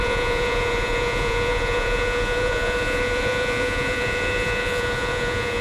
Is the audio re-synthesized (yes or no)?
yes